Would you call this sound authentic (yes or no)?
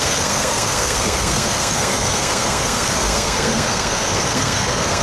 no